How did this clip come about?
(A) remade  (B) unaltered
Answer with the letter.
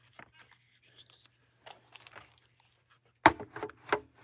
B